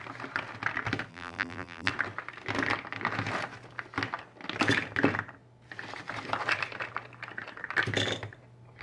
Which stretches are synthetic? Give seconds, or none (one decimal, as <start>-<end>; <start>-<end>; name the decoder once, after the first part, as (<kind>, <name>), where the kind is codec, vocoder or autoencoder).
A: 1.1-1.9 (vocoder, BigVGAN v2)